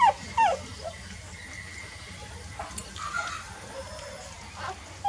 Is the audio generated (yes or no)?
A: no